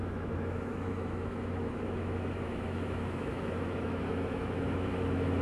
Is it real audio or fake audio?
fake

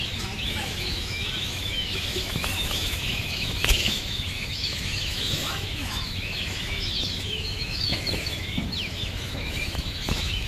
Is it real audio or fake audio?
fake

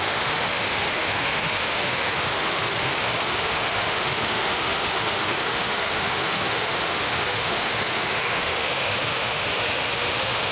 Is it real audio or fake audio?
fake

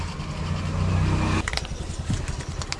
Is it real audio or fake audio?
real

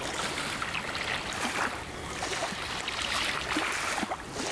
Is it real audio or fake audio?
real